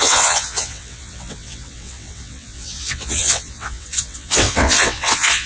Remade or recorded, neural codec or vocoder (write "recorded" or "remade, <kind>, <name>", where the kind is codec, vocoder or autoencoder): remade, vocoder, WaveNeXt